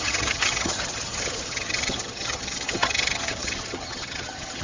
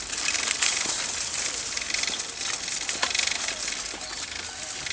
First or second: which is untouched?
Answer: second